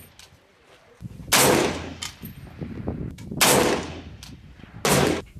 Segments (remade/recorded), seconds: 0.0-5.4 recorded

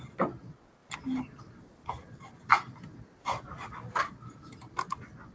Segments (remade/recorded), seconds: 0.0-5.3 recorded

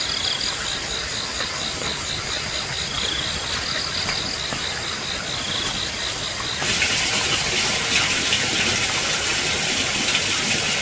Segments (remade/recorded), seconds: 0.0-10.8 recorded